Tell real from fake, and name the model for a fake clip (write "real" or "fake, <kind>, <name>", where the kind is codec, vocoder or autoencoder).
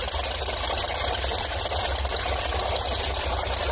real